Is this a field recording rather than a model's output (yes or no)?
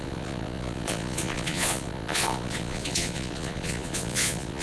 no